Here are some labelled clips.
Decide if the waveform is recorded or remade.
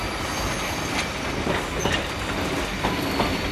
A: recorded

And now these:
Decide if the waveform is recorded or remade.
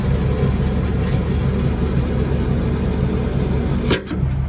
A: recorded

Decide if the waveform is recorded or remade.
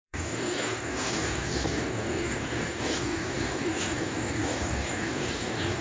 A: remade